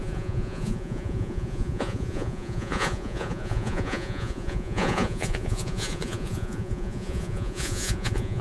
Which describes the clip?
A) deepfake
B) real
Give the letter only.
A